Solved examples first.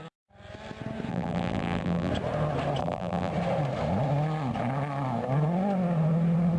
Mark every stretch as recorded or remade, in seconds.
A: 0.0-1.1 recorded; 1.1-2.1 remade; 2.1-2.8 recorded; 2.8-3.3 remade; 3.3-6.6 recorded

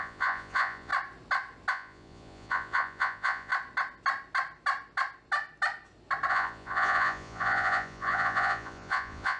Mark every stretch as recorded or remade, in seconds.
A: 0.0-0.9 remade; 0.9-1.7 recorded; 1.7-3.5 remade; 3.5-6.3 recorded; 6.3-9.4 remade

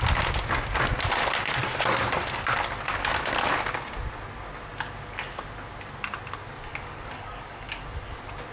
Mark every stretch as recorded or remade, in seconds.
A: 0.0-6.7 recorded; 6.7-7.8 remade; 7.8-8.5 recorded

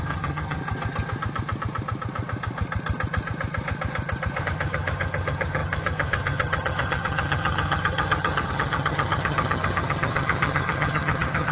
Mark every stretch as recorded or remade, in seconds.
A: 0.0-0.6 remade; 0.6-4.4 recorded; 4.4-11.5 remade

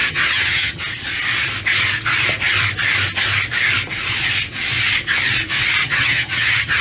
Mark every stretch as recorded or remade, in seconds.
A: 0.0-0.8 remade; 0.8-5.8 recorded; 5.8-6.8 remade

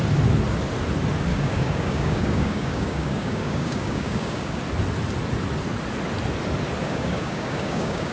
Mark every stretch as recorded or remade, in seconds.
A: 0.0-1.3 recorded; 1.3-4.6 remade; 4.6-6.8 recorded; 6.8-8.1 remade